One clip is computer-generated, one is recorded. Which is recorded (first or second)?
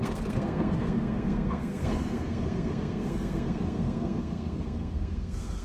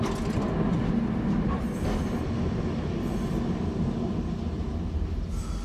second